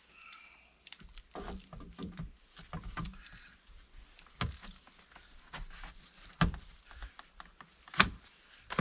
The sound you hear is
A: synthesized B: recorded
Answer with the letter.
B